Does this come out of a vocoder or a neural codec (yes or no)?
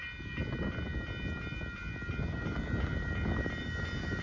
no